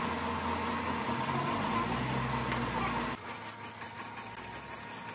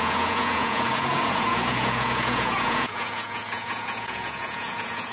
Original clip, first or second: first